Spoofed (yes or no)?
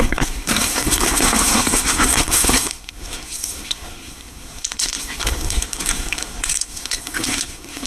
yes